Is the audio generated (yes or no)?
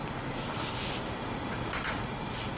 no